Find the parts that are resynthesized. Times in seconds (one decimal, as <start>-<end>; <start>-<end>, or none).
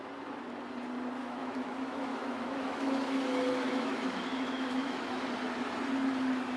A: 1.2-5.2